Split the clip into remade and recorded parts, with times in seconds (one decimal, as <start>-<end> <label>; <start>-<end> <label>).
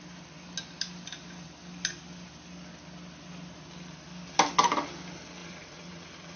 0.0-5.4 recorded; 5.4-6.4 remade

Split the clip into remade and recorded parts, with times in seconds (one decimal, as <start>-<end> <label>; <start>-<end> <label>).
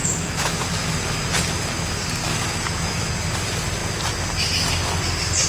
0.0-0.6 remade; 0.6-2.2 recorded; 2.2-3.1 remade; 3.1-5.5 recorded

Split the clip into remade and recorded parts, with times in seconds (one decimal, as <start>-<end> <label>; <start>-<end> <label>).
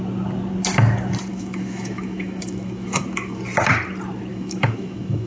0.0-1.3 recorded; 1.3-3.4 remade; 3.4-4.3 recorded; 4.3-5.3 remade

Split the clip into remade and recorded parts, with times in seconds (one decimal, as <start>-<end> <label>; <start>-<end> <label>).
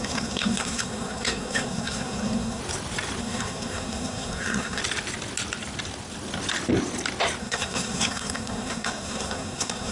0.0-2.6 remade; 2.6-3.2 recorded; 3.2-4.8 remade; 4.8-7.4 recorded; 7.4-9.9 remade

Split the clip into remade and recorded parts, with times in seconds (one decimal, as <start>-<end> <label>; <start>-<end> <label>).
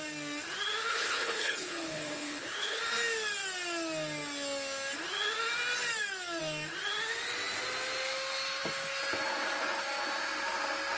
0.0-0.9 recorded; 0.9-2.8 remade; 2.8-11.0 recorded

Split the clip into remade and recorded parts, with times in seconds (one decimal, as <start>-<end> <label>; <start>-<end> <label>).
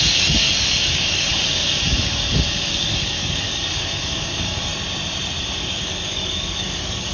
0.0-4.7 remade; 4.7-5.4 recorded; 5.4-7.1 remade